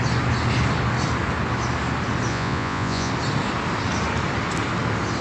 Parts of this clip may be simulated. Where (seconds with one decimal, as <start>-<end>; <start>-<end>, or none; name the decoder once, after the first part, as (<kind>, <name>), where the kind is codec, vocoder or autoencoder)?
2.3-3.1 (vocoder, Vocos)